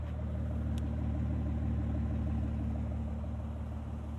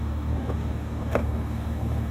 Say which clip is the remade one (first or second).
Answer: second